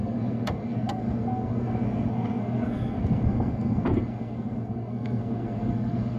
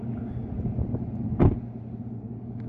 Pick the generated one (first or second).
first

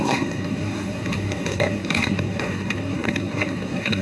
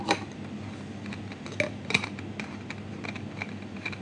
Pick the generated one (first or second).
first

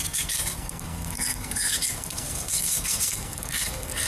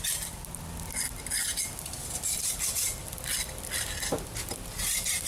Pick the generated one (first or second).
first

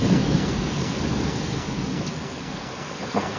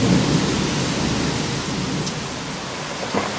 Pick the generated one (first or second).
first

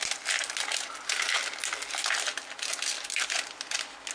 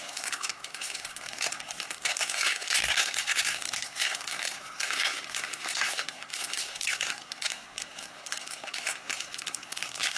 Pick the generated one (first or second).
second